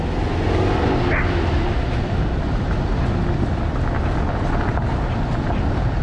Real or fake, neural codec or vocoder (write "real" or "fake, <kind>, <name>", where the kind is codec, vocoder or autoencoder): real